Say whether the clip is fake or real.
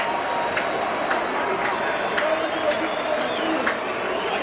real